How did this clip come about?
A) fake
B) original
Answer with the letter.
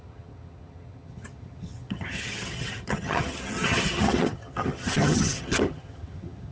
A